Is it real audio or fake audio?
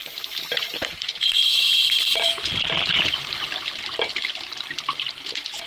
fake